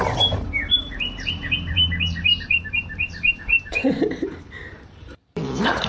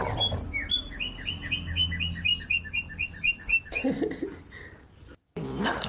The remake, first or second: first